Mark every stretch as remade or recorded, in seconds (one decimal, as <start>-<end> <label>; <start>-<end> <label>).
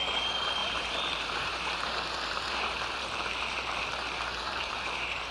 0.0-0.6 recorded; 0.6-3.8 remade; 3.8-4.4 recorded; 4.4-5.3 remade